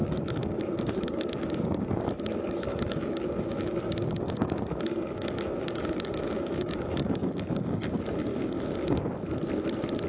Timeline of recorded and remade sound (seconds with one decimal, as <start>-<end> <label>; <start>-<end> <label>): 0.0-2.3 remade; 2.3-2.7 recorded; 2.7-7.9 remade; 7.9-8.3 recorded; 8.3-9.0 remade; 9.0-10.1 recorded